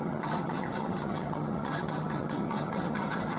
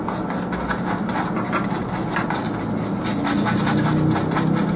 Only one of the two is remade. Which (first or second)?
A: first